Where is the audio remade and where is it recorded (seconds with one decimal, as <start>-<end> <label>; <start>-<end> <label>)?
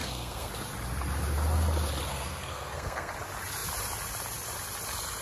0.0-0.5 remade; 0.5-2.1 recorded; 2.1-3.1 remade; 3.1-5.2 recorded